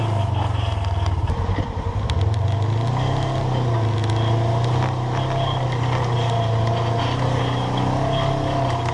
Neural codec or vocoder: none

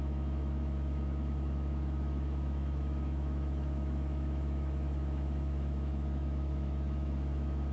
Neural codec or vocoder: autoencoder, DAC-VAE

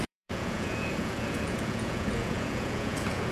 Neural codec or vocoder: vocoder, Vocos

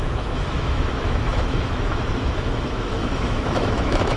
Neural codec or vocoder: autoencoder, DAC-VAE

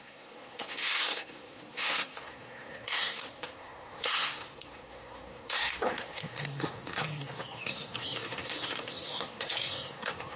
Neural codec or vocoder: codec, SNAC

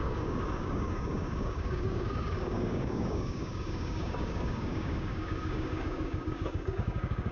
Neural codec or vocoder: codec, DAC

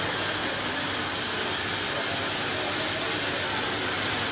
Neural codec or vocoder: none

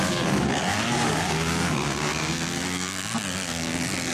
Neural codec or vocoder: codec, DAC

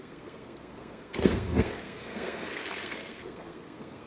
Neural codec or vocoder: codec, SNAC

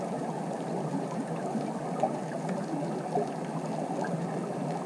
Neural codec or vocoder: none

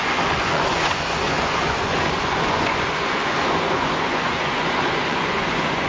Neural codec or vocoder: vocoder, Vocos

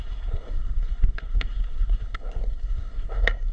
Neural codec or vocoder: codec, SNAC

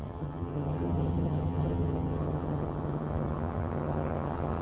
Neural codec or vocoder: vocoder, HiFi-GAN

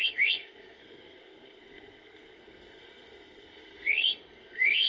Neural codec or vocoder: codec, SNAC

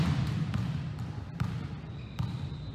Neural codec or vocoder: vocoder, BigVGAN v2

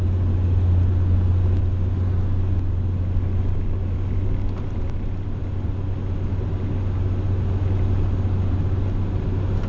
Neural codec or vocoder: none